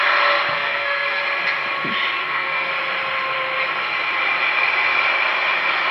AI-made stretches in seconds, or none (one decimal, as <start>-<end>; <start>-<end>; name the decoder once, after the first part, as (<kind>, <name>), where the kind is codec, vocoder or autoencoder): 0.5-1.2 (codec, SNAC); 2.2-2.7